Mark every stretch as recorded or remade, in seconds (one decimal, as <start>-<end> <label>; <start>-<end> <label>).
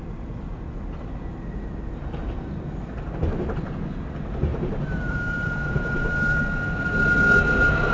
0.0-4.5 recorded; 4.5-6.4 remade; 6.4-7.9 recorded